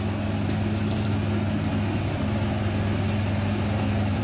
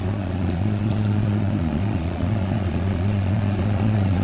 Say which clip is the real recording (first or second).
first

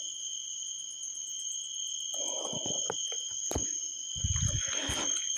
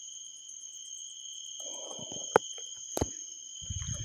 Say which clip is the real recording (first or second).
first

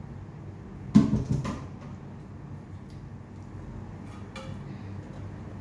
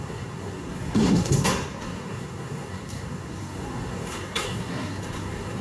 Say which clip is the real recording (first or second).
first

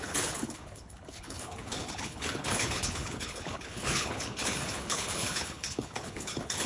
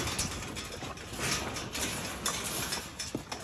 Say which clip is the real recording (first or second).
second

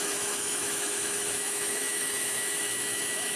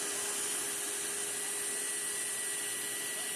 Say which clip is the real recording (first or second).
second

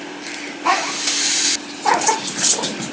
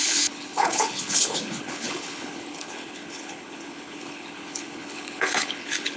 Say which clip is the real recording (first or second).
first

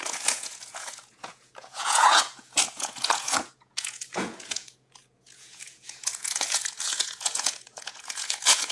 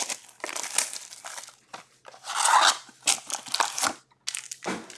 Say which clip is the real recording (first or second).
second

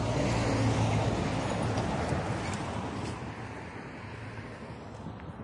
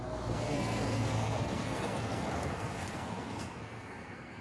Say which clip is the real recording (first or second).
first